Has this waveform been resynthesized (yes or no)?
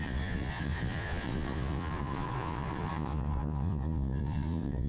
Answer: yes